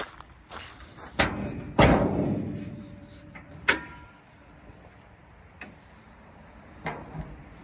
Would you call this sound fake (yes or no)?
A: yes